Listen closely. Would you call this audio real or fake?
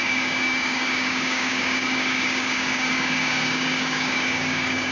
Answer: fake